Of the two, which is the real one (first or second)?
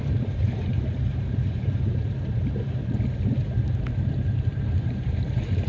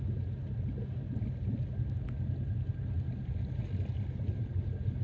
second